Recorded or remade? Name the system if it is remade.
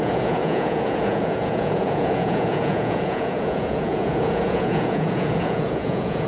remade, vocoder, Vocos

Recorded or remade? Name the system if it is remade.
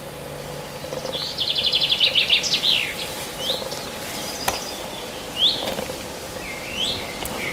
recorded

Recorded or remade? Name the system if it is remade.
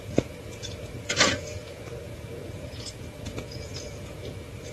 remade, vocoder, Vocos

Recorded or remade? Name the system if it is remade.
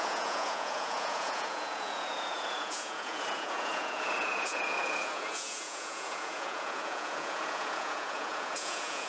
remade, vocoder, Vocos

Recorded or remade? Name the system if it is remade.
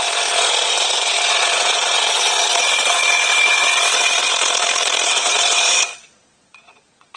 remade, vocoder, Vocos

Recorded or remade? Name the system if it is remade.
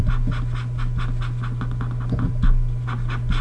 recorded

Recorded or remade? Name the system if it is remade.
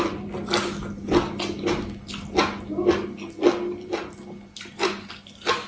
recorded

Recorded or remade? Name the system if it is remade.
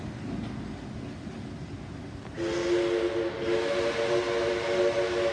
recorded